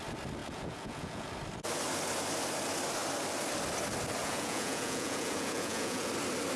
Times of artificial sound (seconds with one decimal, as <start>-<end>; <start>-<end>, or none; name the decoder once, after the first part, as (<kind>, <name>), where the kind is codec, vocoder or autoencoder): 0.4-1.3 (vocoder, Vocos); 4.2-6.1